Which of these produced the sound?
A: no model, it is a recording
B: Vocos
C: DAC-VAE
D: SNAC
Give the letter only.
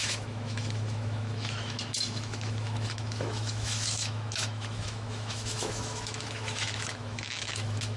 C